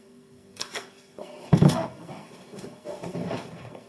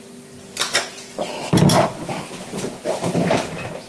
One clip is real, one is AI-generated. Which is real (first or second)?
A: second